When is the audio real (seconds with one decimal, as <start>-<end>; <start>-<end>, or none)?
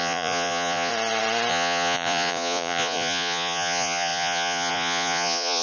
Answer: 0.9-1.5